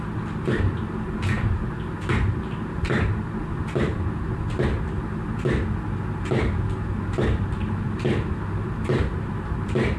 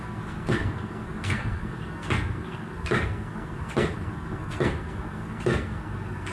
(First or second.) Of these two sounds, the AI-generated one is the second